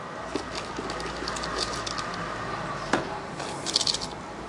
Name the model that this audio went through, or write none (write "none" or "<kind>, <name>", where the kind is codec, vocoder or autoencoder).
none